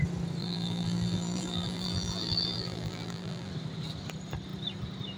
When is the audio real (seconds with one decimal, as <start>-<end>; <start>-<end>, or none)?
0.0-0.4; 3.5-5.2